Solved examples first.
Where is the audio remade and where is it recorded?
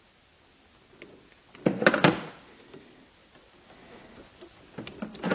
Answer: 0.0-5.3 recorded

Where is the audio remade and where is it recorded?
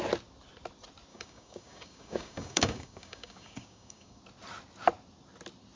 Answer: 0.0-1.1 recorded; 1.1-4.2 remade; 4.2-5.8 recorded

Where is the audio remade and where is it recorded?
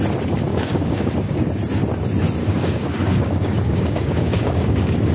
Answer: 0.0-0.5 recorded; 0.5-1.5 remade; 1.5-2.4 recorded; 2.4-5.1 remade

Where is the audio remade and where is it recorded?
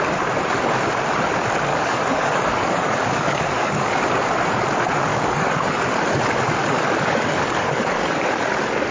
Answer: 0.0-1.7 recorded; 1.7-4.0 remade; 4.0-5.1 recorded; 5.1-5.8 remade; 5.8-6.6 recorded; 6.6-8.9 remade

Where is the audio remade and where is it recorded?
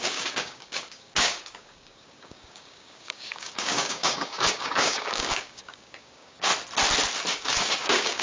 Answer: 0.0-6.5 remade; 6.5-7.3 recorded; 7.3-8.2 remade